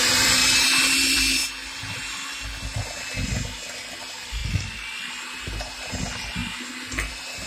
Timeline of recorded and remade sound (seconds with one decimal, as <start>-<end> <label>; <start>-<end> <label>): 0.0-0.4 remade; 0.4-0.9 recorded; 0.9-1.4 remade; 1.4-4.0 recorded; 4.0-4.4 remade; 4.4-6.0 recorded; 6.0-6.4 remade; 6.4-7.1 recorded; 7.1-7.5 remade